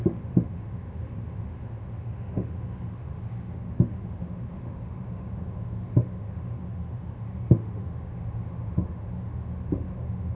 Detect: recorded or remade remade